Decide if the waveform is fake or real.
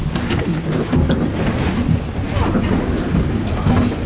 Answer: real